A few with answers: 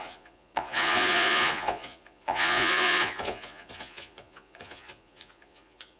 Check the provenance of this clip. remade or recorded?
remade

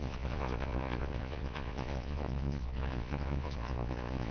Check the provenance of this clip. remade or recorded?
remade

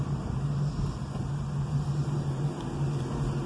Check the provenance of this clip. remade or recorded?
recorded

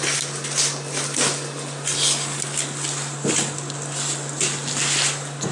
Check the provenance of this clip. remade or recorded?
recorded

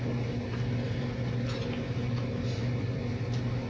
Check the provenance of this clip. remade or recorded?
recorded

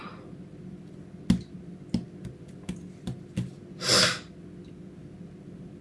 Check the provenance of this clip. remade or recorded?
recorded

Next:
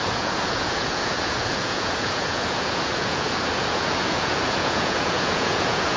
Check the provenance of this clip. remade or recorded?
remade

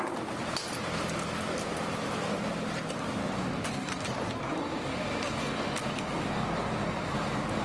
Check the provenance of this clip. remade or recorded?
recorded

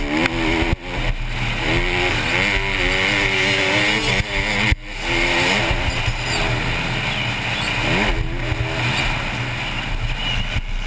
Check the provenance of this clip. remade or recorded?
recorded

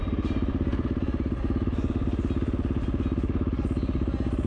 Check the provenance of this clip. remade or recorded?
recorded